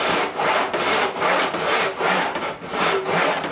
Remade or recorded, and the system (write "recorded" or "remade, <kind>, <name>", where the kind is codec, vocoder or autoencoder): recorded